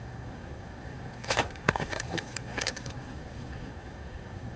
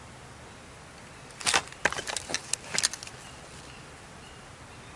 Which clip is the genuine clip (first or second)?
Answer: second